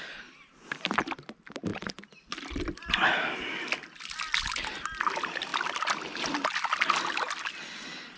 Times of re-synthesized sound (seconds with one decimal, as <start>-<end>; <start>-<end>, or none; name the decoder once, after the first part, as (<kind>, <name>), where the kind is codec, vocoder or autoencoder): none